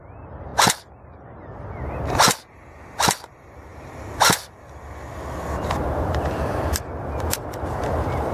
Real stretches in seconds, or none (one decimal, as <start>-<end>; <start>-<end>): 0.0-8.3